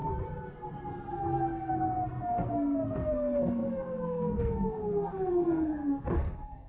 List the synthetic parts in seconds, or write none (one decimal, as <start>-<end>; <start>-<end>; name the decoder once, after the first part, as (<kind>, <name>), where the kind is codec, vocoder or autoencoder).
1.1-6.7 (codec, SNAC)